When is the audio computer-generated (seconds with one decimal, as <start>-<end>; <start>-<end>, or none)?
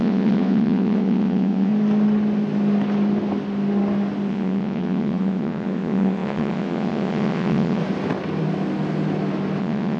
0.0-1.7; 4.3-7.8; 9.6-10.0